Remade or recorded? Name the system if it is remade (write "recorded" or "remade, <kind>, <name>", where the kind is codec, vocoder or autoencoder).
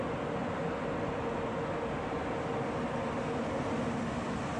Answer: recorded